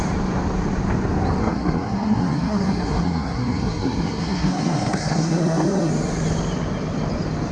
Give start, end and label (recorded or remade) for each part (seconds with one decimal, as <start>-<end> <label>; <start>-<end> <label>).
0.0-1.4 recorded; 1.4-5.9 remade; 5.9-7.5 recorded